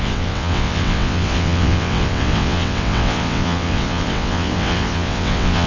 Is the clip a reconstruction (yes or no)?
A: yes